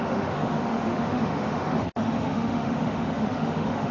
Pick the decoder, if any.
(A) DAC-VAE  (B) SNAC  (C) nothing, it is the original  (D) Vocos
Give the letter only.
A